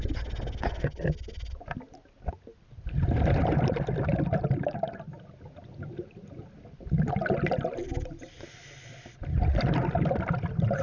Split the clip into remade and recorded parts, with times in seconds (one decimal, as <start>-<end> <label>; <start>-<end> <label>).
0.0-10.8 recorded

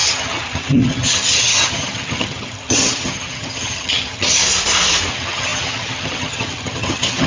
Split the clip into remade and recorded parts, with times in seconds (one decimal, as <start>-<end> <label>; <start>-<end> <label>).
0.0-4.4 remade; 4.4-5.1 recorded; 5.1-7.3 remade

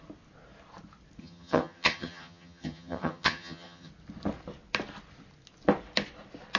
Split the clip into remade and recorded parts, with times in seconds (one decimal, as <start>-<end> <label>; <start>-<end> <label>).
0.0-1.2 recorded; 1.2-3.9 remade; 3.9-6.6 recorded